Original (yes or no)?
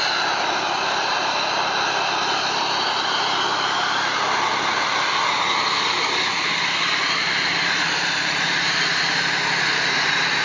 yes